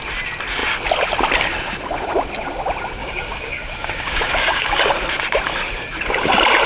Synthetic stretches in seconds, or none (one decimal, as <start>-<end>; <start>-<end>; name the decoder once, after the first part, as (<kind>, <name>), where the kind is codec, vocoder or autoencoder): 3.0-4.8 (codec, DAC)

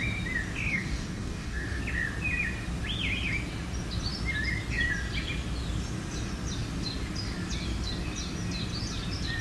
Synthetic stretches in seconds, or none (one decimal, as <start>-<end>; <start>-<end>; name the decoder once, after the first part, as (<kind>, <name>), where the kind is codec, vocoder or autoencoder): 0.7-1.8 (codec, DAC)

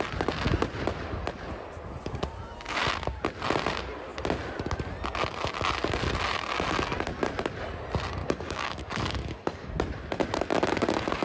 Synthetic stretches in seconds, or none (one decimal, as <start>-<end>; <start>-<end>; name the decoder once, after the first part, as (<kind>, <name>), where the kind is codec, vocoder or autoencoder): 8.2-9.7 (codec, DAC)